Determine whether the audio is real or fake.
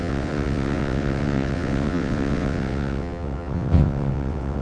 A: fake